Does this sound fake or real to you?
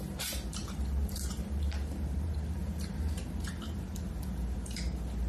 fake